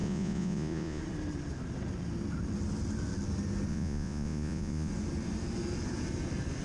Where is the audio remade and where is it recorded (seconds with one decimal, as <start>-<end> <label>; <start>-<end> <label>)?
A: 0.0-1.0 remade; 1.0-3.7 recorded; 3.7-4.9 remade; 4.9-6.6 recorded